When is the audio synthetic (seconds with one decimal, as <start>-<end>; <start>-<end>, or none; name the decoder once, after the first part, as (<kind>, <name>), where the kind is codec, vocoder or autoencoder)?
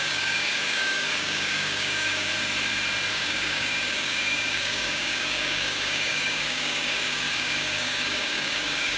0.0-2.3 (codec, DAC); 3.1-9.0